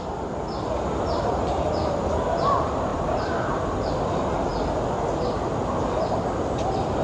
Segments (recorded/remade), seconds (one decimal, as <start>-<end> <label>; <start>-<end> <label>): 0.0-7.0 recorded